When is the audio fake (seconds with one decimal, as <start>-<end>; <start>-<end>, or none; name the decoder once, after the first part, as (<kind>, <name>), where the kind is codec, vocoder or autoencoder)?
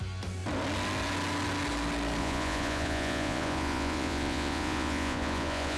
2.2-5.8 (vocoder, Vocos)